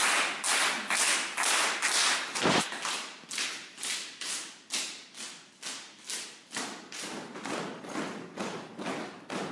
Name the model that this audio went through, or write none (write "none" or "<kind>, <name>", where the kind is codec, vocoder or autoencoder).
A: none